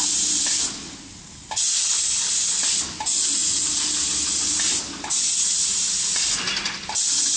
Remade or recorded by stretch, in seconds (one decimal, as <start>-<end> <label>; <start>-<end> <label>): 0.0-7.4 recorded